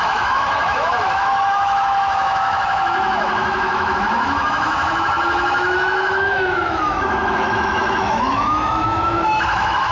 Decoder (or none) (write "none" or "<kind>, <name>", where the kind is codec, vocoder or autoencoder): autoencoder, DAC-VAE